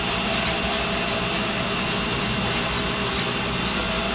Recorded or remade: recorded